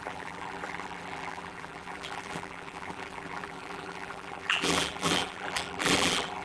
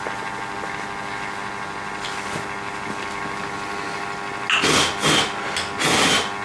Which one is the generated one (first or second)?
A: first